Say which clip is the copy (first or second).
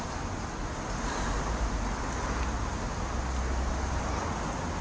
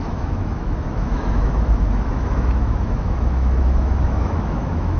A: second